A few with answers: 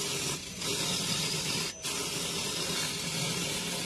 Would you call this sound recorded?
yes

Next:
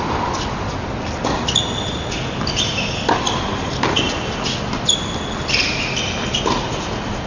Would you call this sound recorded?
yes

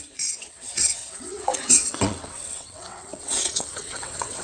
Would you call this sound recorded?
no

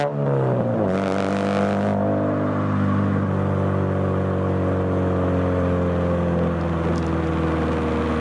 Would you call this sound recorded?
yes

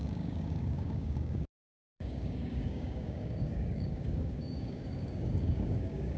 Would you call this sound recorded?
no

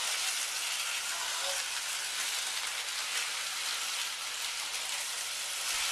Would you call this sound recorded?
yes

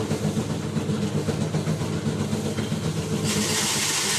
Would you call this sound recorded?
yes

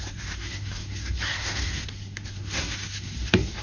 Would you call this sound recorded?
no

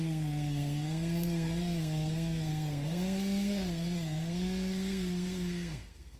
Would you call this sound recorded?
no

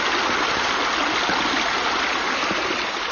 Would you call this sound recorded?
yes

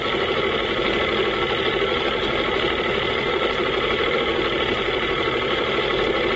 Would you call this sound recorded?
yes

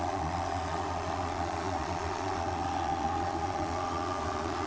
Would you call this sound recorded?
no